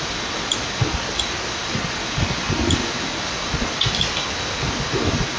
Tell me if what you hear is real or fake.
real